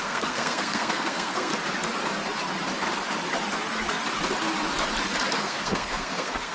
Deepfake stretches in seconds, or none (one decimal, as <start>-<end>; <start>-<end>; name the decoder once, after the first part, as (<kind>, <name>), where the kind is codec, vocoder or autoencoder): 0.0-1.5 (codec, SNAC); 5.4-6.5